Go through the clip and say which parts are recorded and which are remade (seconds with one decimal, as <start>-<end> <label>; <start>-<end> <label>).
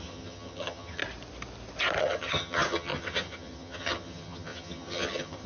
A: 0.0-1.0 remade; 1.0-2.0 recorded; 2.0-5.5 remade